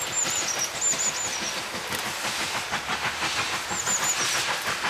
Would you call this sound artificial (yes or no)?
no